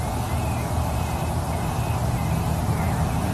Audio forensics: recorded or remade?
recorded